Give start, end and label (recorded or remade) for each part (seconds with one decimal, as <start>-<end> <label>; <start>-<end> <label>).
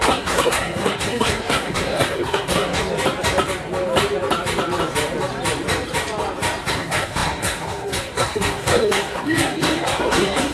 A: 0.0-2.8 remade; 2.8-6.7 recorded; 6.7-10.5 remade